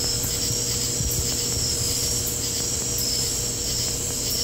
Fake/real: real